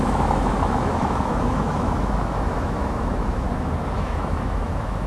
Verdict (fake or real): fake